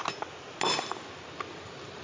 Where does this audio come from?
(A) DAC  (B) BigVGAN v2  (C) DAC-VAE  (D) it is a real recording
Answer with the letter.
D